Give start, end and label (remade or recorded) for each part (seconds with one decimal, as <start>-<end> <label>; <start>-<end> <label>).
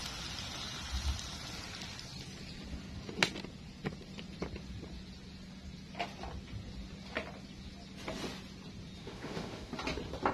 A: 0.0-9.0 recorded; 9.0-9.7 remade; 9.7-10.3 recorded